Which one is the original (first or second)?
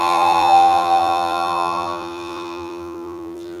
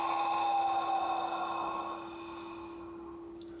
second